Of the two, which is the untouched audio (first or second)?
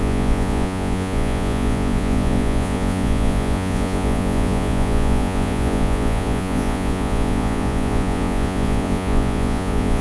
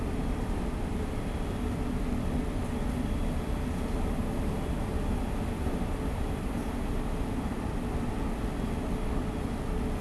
second